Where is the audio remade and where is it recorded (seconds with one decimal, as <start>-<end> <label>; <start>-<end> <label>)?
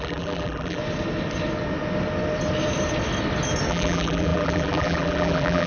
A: 0.0-0.8 remade; 0.8-3.7 recorded; 3.7-5.7 remade